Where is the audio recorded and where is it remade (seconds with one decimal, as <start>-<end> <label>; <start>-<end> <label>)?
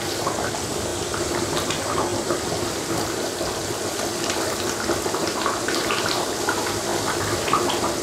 0.0-2.1 recorded; 2.1-3.4 remade; 3.4-5.2 recorded; 5.2-6.2 remade; 6.2-8.0 recorded